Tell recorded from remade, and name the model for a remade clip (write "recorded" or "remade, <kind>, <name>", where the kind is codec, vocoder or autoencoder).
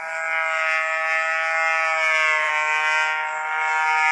recorded